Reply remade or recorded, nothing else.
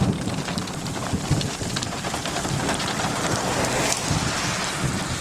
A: recorded